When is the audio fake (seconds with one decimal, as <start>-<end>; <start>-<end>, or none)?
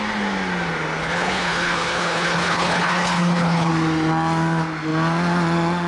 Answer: 1.0-3.7